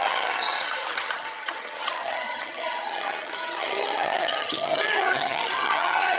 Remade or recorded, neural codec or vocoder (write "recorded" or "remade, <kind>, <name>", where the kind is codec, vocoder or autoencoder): remade, vocoder, HiFi-GAN